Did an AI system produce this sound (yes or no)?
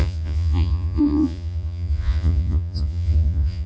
yes